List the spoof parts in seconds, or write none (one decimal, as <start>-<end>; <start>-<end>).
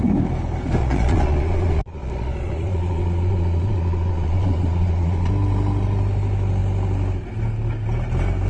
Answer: 0.8-5.3